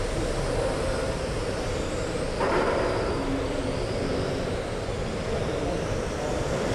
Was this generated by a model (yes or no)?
yes